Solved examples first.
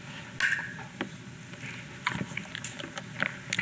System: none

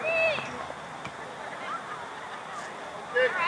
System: none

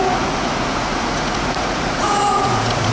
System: vocoder, Vocos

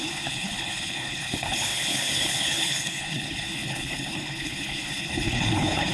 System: codec, HILCodec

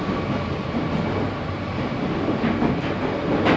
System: none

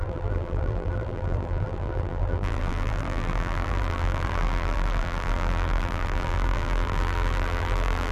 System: vocoder, BigVGAN v2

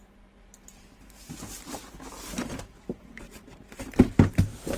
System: vocoder, BigVGAN v2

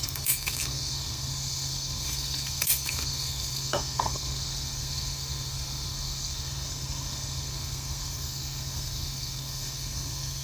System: codec, SNAC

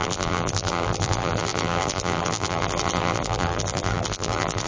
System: vocoder, BigVGAN v2